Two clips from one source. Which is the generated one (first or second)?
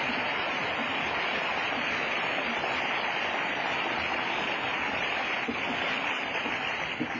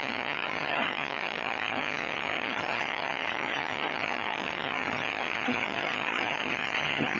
second